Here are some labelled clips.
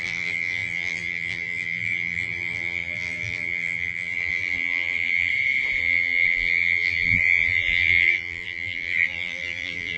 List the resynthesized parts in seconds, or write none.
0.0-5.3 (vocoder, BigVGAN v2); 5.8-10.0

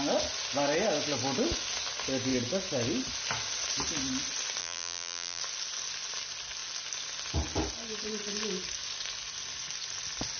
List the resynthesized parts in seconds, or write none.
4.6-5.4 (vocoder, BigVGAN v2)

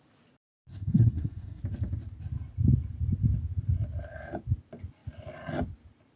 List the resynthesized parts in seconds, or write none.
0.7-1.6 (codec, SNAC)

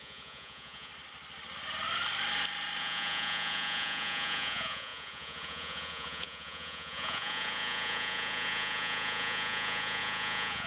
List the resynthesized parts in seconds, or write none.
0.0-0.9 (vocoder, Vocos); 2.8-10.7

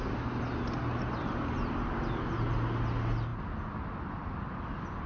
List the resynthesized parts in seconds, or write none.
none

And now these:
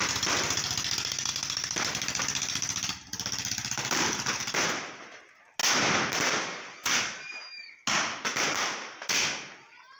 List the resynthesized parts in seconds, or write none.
none

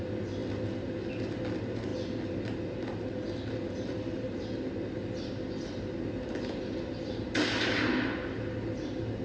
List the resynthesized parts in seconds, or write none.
none